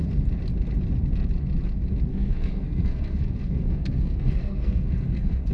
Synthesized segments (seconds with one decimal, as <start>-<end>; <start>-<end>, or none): 2.1-5.5